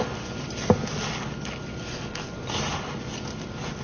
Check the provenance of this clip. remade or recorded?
recorded